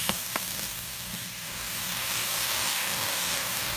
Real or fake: fake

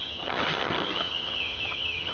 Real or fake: fake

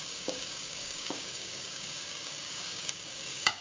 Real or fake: fake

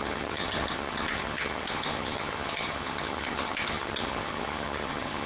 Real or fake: fake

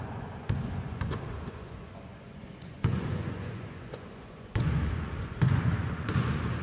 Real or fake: fake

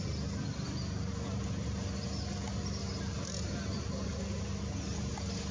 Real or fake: real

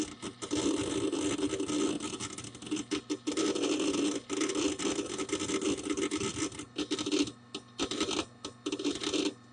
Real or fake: real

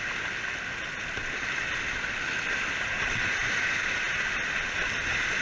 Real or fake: real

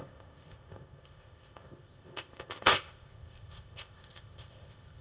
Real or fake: fake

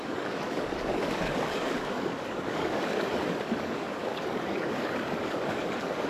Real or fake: fake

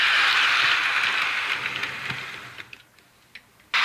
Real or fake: real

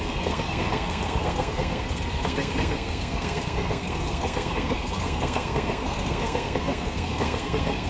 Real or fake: fake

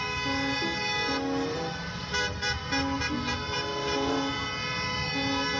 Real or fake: real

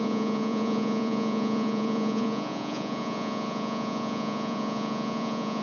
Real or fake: fake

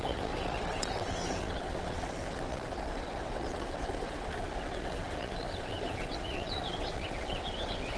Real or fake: fake